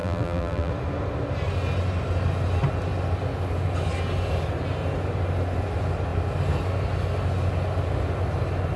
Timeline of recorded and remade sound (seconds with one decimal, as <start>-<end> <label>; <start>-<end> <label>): 0.0-0.7 remade; 0.7-8.8 recorded